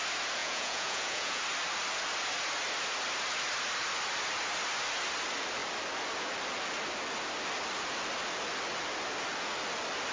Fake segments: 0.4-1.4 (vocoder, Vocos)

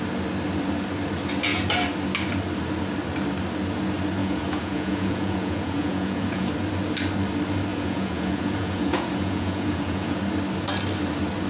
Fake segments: 4.2-6.5 (vocoder, Vocos); 7.7-10.2